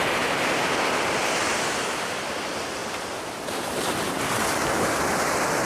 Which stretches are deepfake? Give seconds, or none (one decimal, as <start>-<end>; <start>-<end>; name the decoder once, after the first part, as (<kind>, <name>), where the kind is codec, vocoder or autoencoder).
none